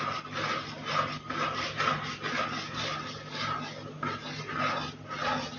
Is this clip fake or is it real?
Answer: real